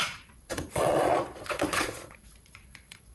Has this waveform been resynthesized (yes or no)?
yes